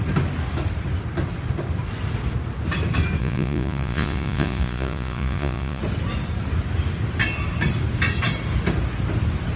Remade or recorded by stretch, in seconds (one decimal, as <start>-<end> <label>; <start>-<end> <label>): 0.0-3.2 recorded; 3.2-5.8 remade; 5.8-9.6 recorded